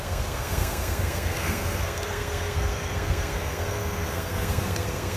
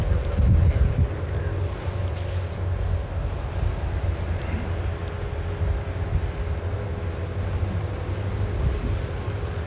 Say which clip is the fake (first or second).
first